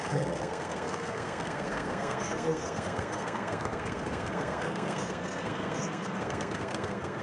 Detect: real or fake fake